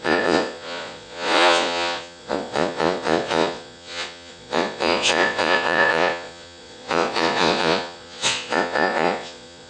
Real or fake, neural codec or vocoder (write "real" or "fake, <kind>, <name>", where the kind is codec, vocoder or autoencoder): fake, vocoder, Vocos